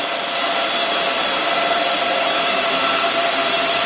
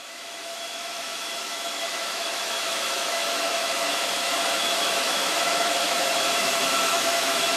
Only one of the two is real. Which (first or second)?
first